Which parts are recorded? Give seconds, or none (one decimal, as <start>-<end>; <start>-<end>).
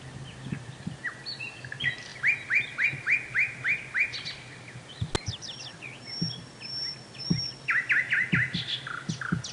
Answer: 0.0-9.5